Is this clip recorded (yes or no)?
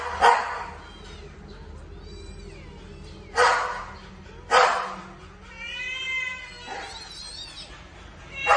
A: yes